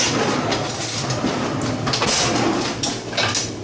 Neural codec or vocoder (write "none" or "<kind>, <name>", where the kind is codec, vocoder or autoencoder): none